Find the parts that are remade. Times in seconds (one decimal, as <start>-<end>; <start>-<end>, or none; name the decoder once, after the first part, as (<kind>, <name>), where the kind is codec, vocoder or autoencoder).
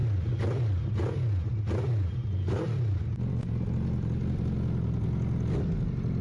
none